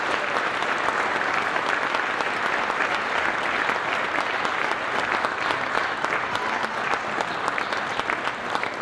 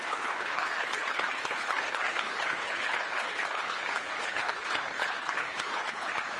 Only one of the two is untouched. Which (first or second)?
first